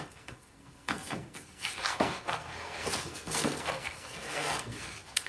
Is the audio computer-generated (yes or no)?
yes